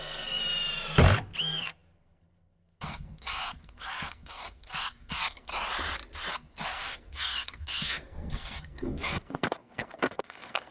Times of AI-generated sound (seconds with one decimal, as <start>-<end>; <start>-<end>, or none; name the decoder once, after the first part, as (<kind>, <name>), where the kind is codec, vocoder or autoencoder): 0.0-0.4 (codec, SNAC); 1.4-5.5; 6.3-10.7